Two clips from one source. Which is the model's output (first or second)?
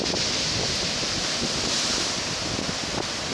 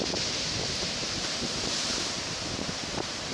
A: second